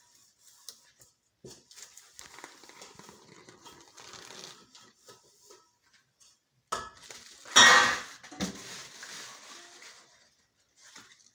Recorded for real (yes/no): yes